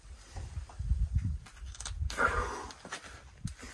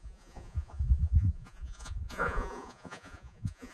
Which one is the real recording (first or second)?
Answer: first